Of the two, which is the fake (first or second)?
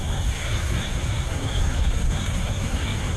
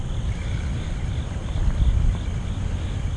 first